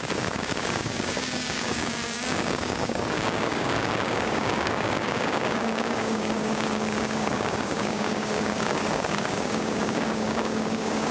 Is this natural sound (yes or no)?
no